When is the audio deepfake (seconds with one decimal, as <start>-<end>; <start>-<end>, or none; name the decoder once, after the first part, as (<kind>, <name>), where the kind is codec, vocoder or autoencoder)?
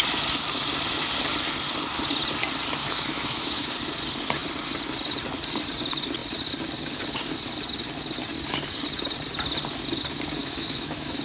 2.8-3.7 (autoencoder, DAC-VAE); 10.4-11.2